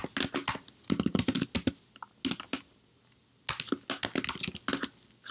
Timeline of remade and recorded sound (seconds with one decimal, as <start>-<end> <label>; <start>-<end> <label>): 0.0-5.3 recorded